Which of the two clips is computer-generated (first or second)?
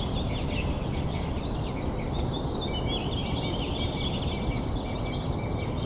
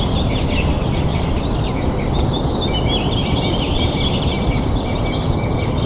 second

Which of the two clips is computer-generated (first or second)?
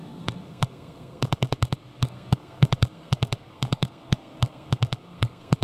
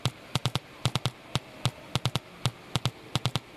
first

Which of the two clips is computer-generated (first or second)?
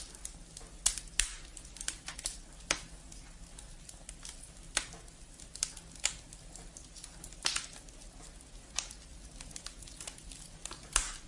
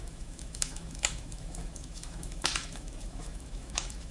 second